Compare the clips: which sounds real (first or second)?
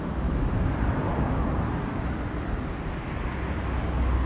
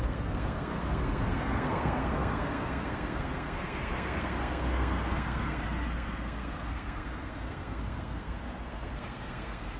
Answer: first